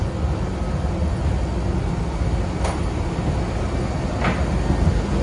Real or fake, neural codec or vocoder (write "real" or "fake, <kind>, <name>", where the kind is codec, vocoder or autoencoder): real